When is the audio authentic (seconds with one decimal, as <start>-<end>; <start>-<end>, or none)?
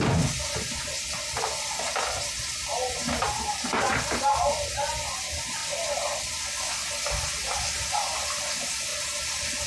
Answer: 0.0-9.7